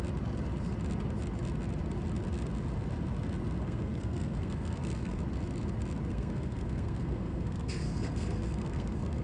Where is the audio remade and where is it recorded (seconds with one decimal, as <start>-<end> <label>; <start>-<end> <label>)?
0.0-3.6 recorded; 3.6-5.2 remade; 5.2-6.1 recorded; 6.1-9.2 remade